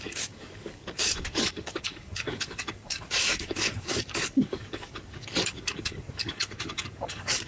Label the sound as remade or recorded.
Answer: remade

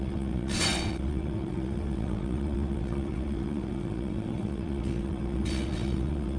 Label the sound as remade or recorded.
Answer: remade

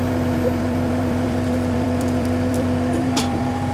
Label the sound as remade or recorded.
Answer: remade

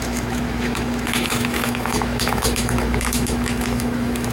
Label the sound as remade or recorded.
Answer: remade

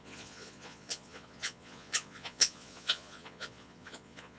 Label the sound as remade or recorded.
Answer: remade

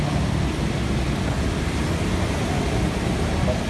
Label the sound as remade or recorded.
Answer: recorded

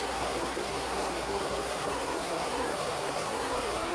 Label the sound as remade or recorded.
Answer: remade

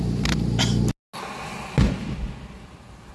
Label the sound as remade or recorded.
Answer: recorded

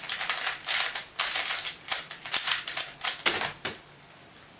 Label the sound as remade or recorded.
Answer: recorded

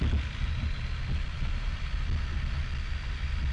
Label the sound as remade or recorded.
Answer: recorded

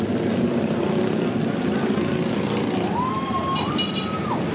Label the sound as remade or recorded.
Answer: recorded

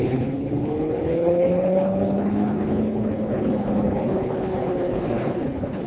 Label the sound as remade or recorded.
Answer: remade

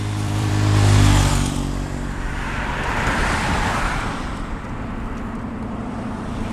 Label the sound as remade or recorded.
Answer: remade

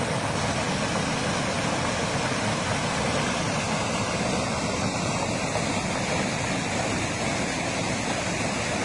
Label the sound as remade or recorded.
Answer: recorded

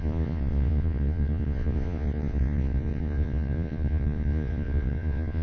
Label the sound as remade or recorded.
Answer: remade